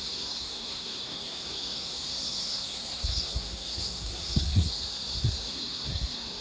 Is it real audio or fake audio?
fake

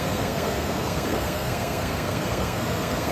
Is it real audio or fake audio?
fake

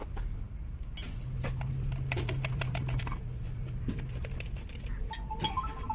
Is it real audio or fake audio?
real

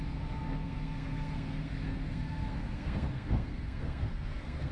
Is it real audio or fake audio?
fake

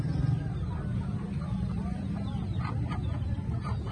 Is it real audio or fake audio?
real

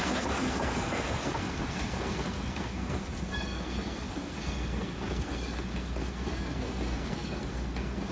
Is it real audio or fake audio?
fake